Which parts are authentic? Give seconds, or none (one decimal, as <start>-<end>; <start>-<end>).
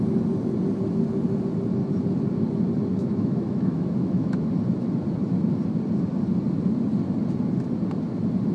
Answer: 0.0-2.9; 4.5-8.5